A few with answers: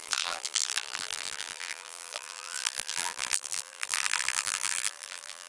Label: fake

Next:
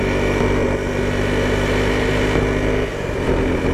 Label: real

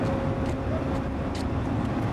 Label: real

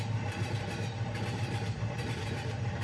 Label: fake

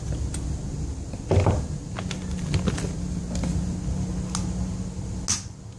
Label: real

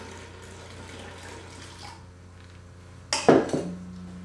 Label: real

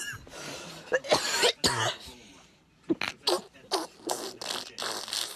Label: real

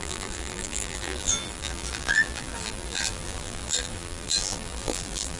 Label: fake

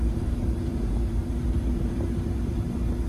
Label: fake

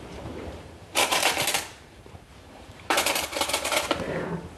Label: fake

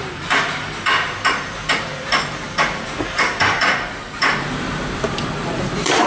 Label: fake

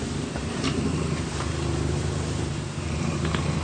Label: fake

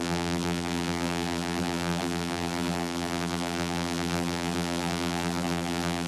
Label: fake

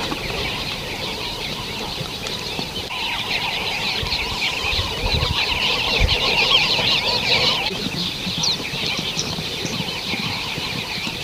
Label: fake